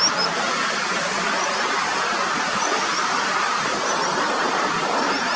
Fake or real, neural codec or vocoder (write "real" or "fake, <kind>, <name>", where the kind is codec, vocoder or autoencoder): real